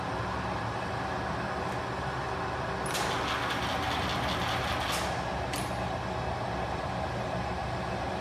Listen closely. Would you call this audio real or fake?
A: real